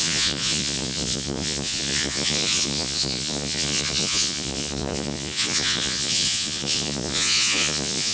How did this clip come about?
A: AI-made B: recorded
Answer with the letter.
A